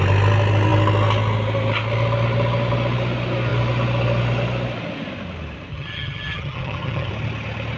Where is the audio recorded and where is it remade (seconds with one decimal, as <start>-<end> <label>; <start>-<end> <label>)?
0.0-5.7 recorded; 5.7-7.1 remade; 7.1-7.8 recorded